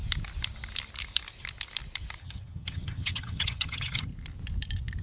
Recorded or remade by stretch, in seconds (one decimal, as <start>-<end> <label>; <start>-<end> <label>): 0.0-2.2 recorded; 2.2-4.1 remade; 4.1-5.0 recorded